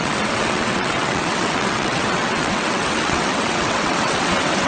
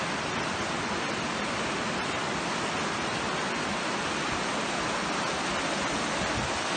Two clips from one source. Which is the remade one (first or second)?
first